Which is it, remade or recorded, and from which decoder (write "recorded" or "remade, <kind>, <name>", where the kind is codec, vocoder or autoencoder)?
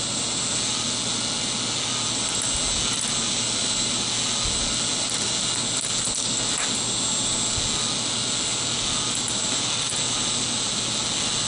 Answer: recorded